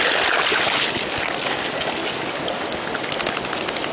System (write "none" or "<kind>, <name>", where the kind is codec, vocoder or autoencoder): none